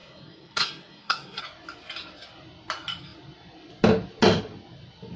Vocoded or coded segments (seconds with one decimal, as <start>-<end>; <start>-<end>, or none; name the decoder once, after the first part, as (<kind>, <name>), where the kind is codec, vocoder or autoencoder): 0.0-1.4 (codec, SNAC)